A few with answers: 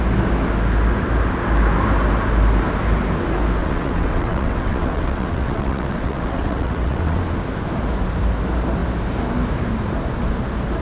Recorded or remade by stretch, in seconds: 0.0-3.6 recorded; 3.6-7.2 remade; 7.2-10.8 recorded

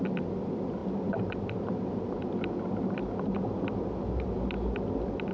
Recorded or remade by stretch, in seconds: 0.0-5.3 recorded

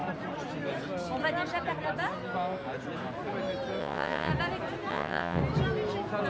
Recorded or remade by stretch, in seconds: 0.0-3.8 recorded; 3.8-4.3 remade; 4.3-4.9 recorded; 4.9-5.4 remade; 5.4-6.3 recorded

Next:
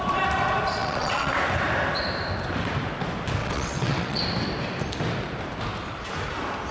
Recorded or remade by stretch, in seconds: 0.0-0.8 recorded; 0.8-1.3 remade; 1.3-3.4 recorded; 3.4-4.2 remade; 4.2-6.7 recorded